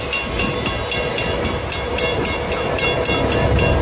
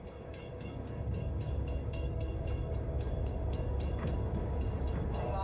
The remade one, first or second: second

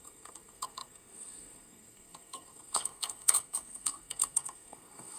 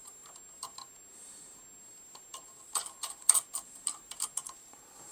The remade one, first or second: first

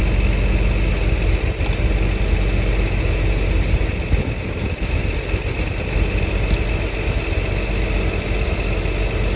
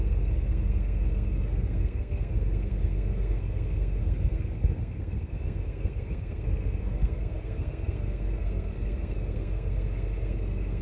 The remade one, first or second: second